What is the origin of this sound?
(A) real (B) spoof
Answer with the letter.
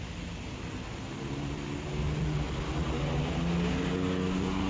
A